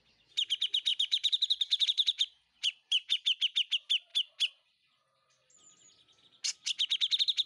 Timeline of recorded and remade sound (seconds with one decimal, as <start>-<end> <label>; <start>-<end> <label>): 0.0-0.9 recorded; 0.9-3.2 remade; 3.2-7.5 recorded